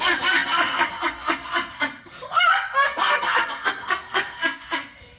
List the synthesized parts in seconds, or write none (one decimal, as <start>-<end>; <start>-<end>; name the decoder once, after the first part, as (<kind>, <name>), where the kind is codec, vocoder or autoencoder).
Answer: 0.0-5.2 (codec, SNAC)

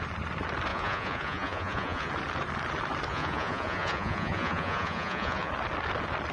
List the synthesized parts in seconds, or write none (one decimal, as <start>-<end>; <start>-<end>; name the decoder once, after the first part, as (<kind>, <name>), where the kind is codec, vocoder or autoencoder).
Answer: 0.7-2.1 (vocoder, Vocos); 3.1-5.5

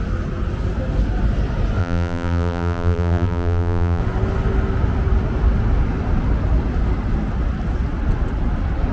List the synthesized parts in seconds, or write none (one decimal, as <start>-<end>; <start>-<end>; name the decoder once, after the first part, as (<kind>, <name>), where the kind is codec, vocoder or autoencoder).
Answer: 1.8-4.0 (vocoder, BigVGAN v2)